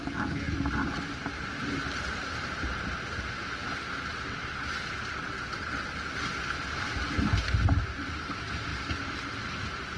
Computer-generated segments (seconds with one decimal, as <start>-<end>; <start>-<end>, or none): none